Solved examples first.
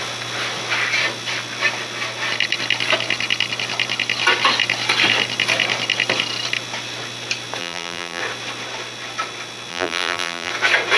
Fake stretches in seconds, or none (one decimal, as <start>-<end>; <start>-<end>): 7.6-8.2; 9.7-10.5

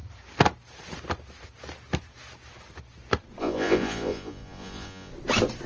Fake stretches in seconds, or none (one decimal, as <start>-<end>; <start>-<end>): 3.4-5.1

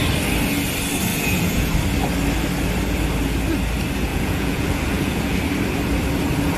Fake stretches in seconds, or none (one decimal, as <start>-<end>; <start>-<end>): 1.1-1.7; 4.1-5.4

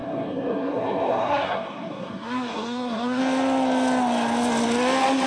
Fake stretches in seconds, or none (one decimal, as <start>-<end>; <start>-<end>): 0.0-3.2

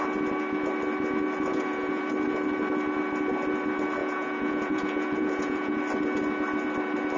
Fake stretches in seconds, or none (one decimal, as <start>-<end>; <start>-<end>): 1.5-2.0; 4.0-5.8